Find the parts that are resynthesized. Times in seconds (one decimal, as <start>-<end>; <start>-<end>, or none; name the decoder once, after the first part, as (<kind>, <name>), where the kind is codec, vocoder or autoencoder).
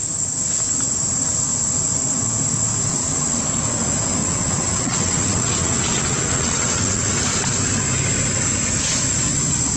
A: 2.9-3.4 (vocoder, WaveNeXt); 4.2-7.1